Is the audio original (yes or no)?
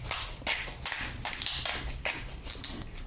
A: yes